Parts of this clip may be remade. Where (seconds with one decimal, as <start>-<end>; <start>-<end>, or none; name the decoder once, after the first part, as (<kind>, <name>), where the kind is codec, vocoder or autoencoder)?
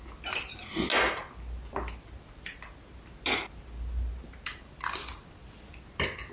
none